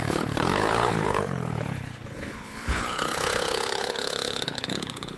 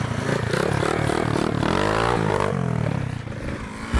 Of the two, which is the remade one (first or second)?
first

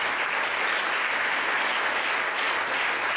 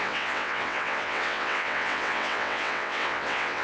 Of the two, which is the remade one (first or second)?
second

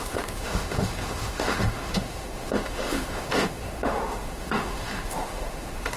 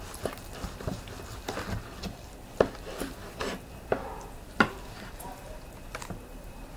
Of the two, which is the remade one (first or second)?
first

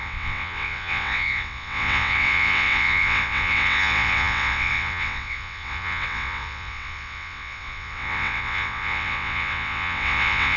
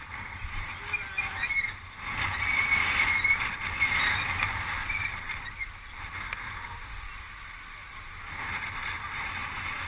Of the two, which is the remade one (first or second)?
first